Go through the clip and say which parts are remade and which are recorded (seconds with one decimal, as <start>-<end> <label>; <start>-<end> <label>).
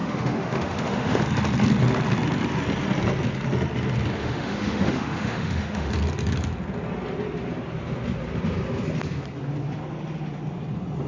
0.0-1.2 remade; 1.2-4.2 recorded; 4.2-5.9 remade; 5.9-11.1 recorded